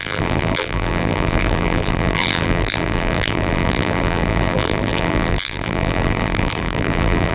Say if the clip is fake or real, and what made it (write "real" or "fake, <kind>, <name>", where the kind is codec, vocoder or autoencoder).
fake, vocoder, BigVGAN v2